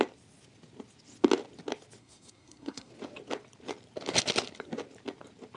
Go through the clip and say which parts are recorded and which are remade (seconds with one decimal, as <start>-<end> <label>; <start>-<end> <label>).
0.0-2.0 recorded; 2.0-2.9 remade; 2.9-5.6 recorded